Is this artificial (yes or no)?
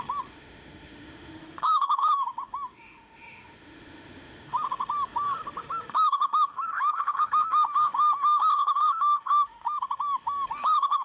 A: yes